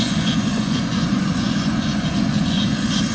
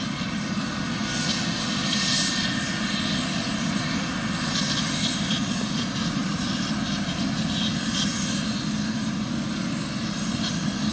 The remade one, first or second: first